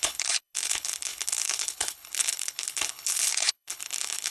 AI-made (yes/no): yes